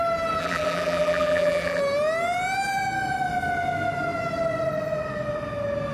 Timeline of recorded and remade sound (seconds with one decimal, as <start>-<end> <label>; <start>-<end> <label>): 0.0-0.4 recorded; 0.4-1.8 remade; 1.8-5.9 recorded